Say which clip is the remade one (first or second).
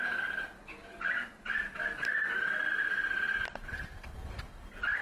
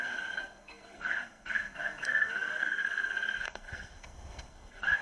second